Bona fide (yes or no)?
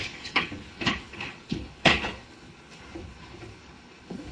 no